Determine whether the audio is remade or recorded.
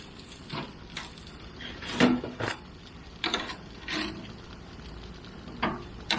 recorded